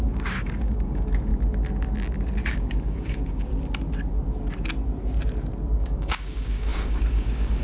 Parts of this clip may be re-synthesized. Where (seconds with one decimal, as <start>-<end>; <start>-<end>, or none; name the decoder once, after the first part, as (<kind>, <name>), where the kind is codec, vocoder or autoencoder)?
0.0-1.3 (codec, DAC); 2.5-3.5; 5.8-7.6